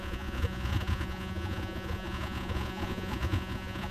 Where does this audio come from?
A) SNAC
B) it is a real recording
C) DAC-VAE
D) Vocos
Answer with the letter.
D